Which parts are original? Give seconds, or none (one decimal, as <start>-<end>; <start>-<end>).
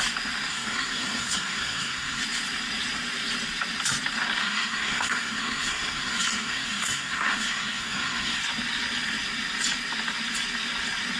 0.0-0.5; 2.2-4.4; 8.4-11.2